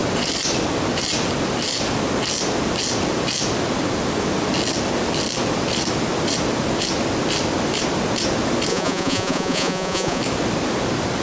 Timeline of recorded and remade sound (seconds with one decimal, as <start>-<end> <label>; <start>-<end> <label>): 0.0-8.7 recorded; 8.7-10.2 remade; 10.2-11.2 recorded